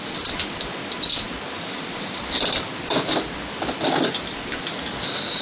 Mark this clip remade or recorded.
recorded